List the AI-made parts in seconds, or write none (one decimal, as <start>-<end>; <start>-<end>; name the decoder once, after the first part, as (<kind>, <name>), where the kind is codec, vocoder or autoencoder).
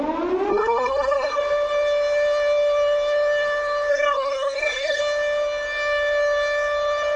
0.5-1.4 (codec, SNAC); 3.9-5.0